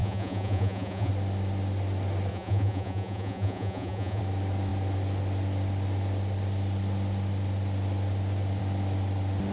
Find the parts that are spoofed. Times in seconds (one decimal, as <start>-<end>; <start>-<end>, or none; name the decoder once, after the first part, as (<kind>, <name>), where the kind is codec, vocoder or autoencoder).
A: 0.0-1.1 (vocoder, Vocos); 2.3-4.2